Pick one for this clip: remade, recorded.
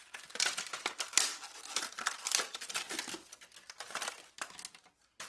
recorded